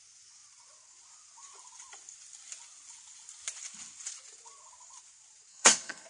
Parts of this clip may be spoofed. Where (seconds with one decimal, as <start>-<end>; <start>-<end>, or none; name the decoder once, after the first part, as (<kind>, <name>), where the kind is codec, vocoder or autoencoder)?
5.5-6.1 (codec, SNAC)